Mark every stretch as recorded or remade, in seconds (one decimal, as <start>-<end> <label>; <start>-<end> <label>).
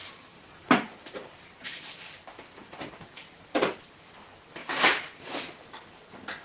0.0-3.8 remade; 3.8-4.6 recorded; 4.6-5.4 remade; 5.4-6.4 recorded